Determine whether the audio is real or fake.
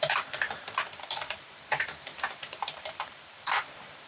fake